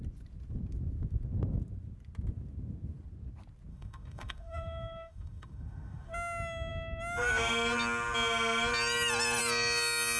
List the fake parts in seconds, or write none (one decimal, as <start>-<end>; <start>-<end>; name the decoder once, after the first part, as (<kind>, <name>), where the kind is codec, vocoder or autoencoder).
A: 3.7-6.1 (autoencoder, DAC-VAE)

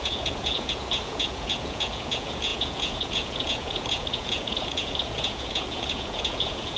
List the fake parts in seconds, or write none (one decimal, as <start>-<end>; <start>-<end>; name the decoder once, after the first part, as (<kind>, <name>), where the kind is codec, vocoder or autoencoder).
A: 0.0-6.8 (vocoder, Vocos)

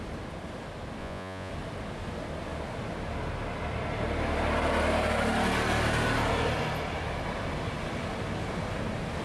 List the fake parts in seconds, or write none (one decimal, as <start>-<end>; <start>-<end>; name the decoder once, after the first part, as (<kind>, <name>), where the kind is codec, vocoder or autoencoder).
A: 1.0-1.5 (vocoder, Vocos)

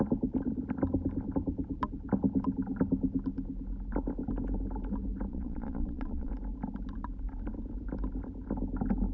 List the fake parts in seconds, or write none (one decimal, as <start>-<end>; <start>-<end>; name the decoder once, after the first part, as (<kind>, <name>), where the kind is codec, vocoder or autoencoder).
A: 5.3-6.3 (vocoder, Vocos)

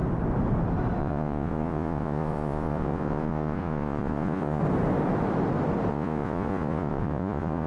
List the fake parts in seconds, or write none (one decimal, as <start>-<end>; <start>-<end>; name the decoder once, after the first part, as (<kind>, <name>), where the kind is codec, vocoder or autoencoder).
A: 1.0-4.6 (vocoder, Vocos); 5.9-7.7

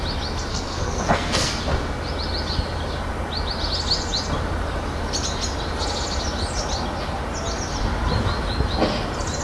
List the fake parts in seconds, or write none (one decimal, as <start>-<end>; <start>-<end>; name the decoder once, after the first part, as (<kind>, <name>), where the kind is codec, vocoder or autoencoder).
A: 0.5-1.6 (codec, SNAC)

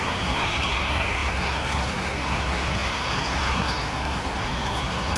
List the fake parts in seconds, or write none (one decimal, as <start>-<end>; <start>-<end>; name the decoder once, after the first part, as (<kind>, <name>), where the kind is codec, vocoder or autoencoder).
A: 0.0-5.2 (codec, SNAC)